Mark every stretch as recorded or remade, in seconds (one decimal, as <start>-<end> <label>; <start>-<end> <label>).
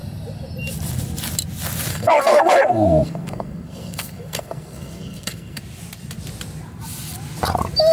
0.0-1.9 recorded; 1.9-5.6 remade; 5.6-7.9 recorded